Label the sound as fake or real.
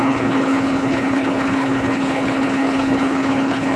fake